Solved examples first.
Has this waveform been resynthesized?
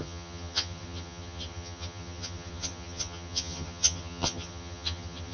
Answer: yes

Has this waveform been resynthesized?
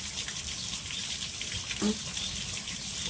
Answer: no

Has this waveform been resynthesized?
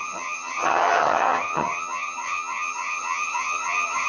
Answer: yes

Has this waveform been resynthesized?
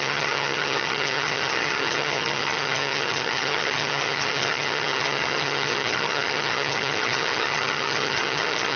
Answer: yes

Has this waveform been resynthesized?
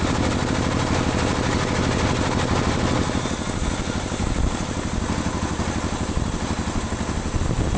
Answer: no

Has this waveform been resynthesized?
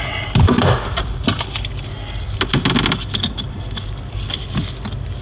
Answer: no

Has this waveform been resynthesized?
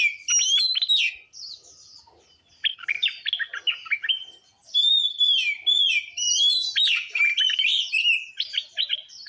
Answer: no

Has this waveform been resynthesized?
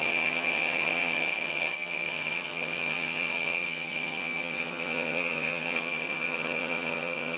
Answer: yes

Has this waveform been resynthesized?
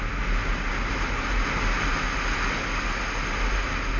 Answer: no